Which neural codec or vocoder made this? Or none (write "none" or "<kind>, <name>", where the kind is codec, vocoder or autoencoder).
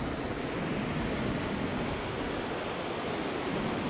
none